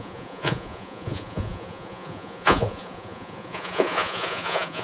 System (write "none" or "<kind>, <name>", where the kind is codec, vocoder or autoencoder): vocoder, Vocos